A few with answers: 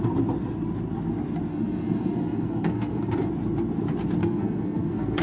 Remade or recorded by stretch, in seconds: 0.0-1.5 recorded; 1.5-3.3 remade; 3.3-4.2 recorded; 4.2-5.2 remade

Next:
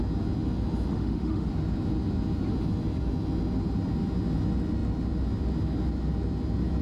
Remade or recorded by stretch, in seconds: 0.0-0.9 recorded; 0.9-1.5 remade; 1.5-6.8 recorded

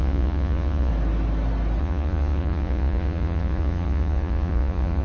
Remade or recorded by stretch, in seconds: 0.0-0.9 remade; 0.9-1.8 recorded; 1.8-5.0 remade